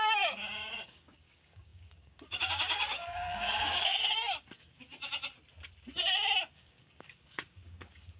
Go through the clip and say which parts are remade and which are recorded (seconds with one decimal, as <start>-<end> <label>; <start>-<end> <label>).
0.0-4.9 remade; 4.9-6.5 recorded; 6.5-8.2 remade

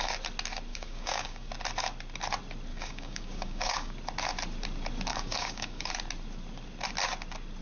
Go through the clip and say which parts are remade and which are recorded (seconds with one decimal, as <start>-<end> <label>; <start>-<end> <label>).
0.0-0.7 recorded; 0.7-1.5 remade; 1.5-2.7 recorded; 2.7-3.9 remade; 3.9-5.1 recorded; 5.1-5.9 remade; 5.9-7.6 recorded